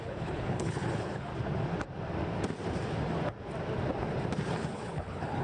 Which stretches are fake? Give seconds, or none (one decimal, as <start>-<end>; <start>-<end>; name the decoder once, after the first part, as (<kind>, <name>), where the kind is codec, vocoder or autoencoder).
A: 0.0-1.3 (codec, HILCodec); 4.5-5.4